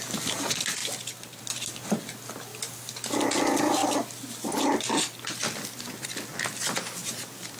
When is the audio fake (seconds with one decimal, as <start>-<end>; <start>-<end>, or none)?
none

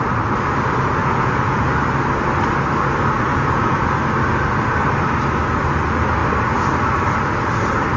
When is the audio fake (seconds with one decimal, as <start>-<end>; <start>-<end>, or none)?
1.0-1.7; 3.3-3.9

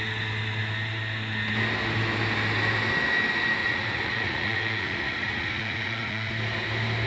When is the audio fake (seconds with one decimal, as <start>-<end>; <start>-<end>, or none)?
3.6-6.3

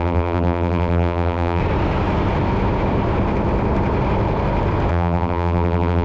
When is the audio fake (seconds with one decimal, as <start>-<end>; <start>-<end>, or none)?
0.0-1.6; 4.9-6.0

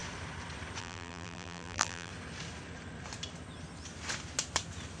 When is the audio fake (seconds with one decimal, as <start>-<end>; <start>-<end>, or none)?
0.8-2.1